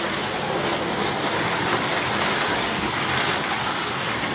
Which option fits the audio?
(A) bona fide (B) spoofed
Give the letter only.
A